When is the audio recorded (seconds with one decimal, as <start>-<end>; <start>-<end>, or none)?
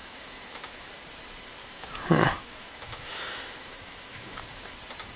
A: 0.9-1.6; 4.7-5.2